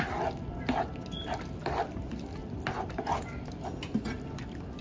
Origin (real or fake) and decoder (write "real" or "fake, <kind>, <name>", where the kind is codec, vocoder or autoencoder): real